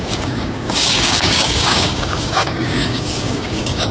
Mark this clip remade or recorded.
remade